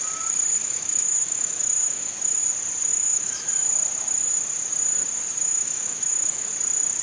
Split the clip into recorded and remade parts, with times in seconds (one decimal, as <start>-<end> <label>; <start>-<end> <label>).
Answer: 0.0-0.6 recorded; 0.6-2.4 remade; 2.4-2.9 recorded; 2.9-3.5 remade; 3.5-5.4 recorded; 5.4-6.5 remade; 6.5-7.0 recorded